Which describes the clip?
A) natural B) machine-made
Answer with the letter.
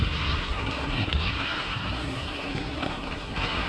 B